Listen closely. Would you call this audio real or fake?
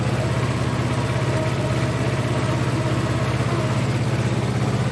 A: real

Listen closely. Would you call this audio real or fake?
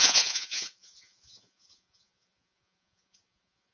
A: fake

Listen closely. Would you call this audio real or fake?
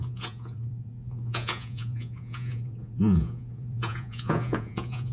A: fake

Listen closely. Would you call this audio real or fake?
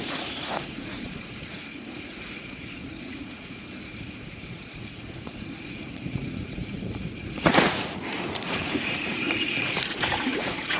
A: fake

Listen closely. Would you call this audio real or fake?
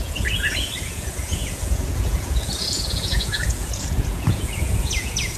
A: fake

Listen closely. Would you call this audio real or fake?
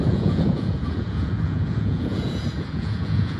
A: fake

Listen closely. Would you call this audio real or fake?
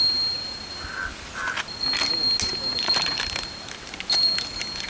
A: real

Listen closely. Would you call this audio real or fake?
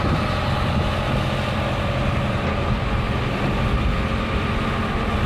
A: real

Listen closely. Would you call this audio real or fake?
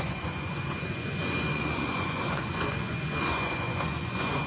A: fake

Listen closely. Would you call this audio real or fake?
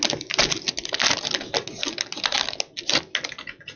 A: real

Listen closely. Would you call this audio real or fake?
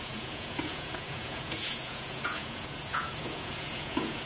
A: fake